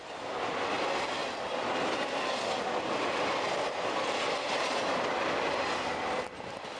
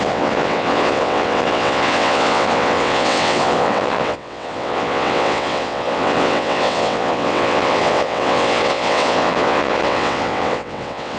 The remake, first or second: second